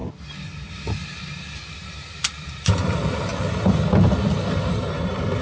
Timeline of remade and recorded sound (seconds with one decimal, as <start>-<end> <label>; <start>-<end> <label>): 0.0-1.7 recorded; 1.7-3.3 remade; 3.3-4.7 recorded; 4.7-5.4 remade

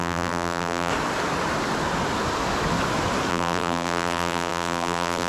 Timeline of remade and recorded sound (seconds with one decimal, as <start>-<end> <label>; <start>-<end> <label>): 0.0-0.9 remade; 0.9-3.3 recorded; 3.3-5.3 remade

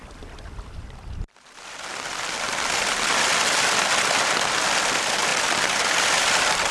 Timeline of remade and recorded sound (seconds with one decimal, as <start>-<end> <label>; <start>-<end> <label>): 0.0-6.7 recorded

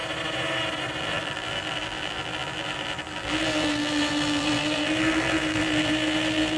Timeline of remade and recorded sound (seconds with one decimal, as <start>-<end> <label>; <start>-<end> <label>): 0.0-1.0 recorded; 1.0-6.6 remade